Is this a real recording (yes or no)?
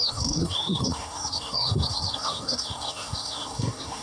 no